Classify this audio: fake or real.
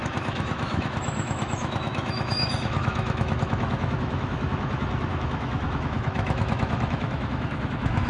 fake